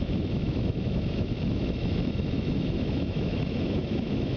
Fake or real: fake